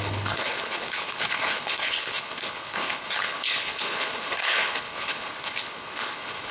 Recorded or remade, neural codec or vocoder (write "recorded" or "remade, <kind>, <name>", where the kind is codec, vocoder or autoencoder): remade, codec, HILCodec